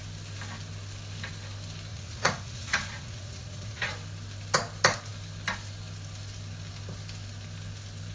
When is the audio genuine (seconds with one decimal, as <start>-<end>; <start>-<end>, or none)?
0.0-1.9; 3.9-8.1